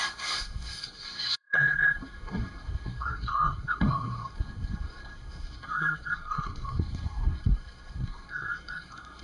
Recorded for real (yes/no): no